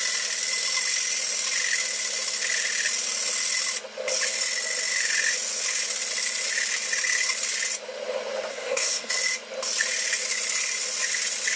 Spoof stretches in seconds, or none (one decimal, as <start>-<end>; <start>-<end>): 8.5-9.1